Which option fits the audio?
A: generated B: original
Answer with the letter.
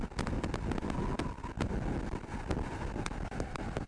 B